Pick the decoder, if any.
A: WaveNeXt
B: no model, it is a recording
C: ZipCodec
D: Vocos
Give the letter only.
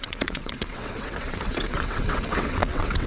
A